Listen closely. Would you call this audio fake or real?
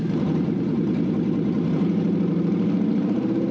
fake